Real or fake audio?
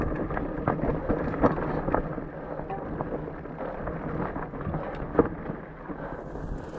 real